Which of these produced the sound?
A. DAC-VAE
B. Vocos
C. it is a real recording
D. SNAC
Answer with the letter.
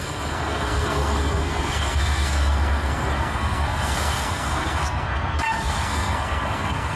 D